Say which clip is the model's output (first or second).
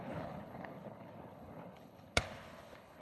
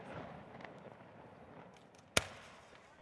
first